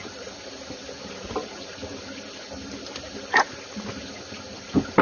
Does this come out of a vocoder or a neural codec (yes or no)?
no